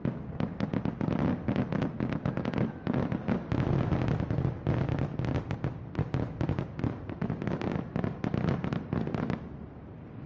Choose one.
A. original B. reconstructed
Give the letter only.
A